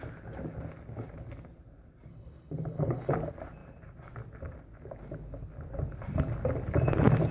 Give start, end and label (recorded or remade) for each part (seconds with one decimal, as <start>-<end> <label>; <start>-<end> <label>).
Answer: 0.0-2.1 recorded; 2.1-3.1 remade; 3.1-7.3 recorded